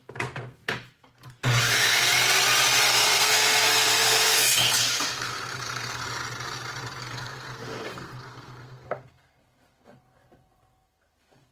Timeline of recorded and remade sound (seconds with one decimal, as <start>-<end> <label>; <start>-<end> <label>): 0.0-0.6 remade; 0.6-1.6 recorded; 1.6-2.1 remade; 2.1-2.8 recorded; 2.8-6.0 remade; 6.0-7.0 recorded; 7.0-11.5 remade